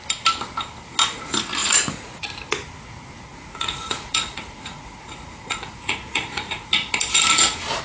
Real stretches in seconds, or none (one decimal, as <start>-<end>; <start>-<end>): 0.0-1.6; 2.2-3.3; 6.7-7.8